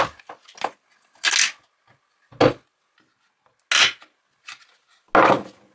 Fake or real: real